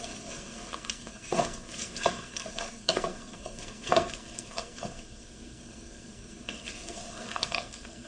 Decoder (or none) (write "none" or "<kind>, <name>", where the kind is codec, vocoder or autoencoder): codec, SNAC